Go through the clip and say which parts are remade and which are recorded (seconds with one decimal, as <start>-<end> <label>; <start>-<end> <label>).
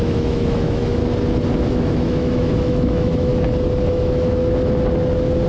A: 0.0-1.0 remade; 1.0-1.6 recorded; 1.6-3.3 remade; 3.3-3.9 recorded; 3.9-4.4 remade; 4.4-5.5 recorded